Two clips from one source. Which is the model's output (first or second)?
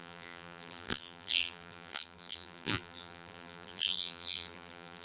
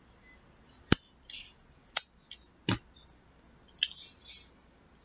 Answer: first